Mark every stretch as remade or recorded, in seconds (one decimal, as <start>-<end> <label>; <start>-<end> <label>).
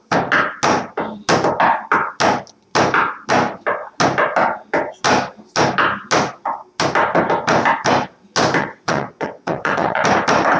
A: 0.0-8.6 recorded; 8.6-10.0 remade; 10.0-10.6 recorded